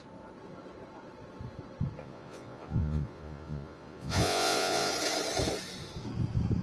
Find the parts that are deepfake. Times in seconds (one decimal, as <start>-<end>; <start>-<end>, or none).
2.0-4.9